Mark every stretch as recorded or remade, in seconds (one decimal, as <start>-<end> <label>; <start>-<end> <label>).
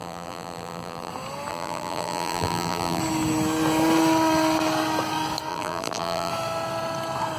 0.0-1.1 remade; 1.1-1.5 recorded; 1.5-3.0 remade; 3.0-5.5 recorded; 5.5-6.3 remade; 6.3-7.4 recorded